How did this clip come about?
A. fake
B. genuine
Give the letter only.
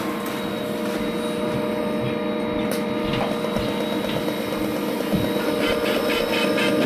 B